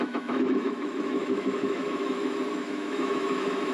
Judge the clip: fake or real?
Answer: fake